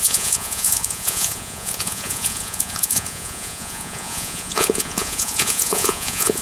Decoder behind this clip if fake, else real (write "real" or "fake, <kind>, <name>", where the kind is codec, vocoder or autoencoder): fake, vocoder, Vocos